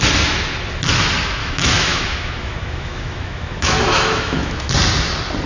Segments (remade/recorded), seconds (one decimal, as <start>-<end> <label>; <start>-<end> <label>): 0.0-1.4 recorded; 1.4-4.7 remade; 4.7-5.5 recorded